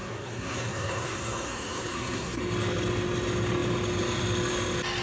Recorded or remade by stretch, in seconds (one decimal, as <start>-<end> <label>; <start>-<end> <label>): 0.0-2.4 remade; 2.4-5.0 recorded